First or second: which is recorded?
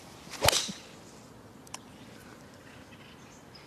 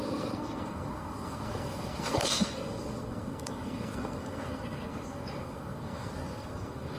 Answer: first